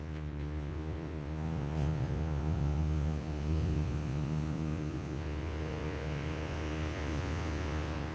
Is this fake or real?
fake